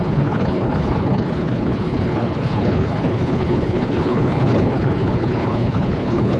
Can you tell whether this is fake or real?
fake